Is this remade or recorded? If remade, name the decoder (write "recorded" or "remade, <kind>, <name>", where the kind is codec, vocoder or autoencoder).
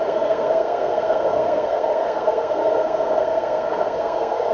remade, codec, SNAC